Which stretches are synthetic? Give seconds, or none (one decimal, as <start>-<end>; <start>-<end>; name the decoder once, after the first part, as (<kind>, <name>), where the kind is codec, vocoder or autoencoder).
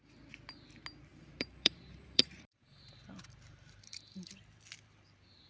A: 1.1-4.3 (vocoder, BigVGAN v2)